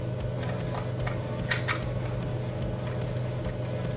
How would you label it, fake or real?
real